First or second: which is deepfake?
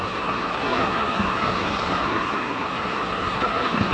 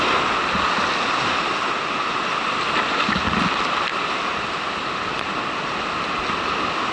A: first